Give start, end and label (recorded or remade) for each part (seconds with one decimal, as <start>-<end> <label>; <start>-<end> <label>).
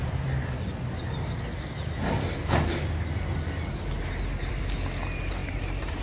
0.0-6.0 recorded